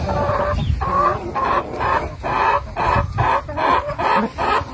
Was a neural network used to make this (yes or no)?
no